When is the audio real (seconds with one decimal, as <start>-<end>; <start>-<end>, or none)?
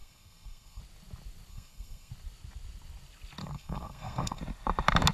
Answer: 0.8-1.5; 2.1-3.4; 4.4-5.1